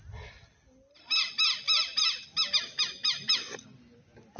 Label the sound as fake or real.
real